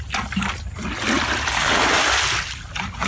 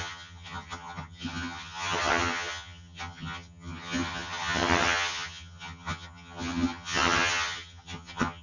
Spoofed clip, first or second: second